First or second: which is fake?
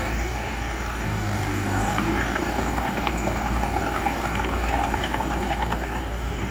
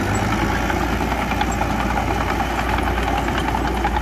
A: first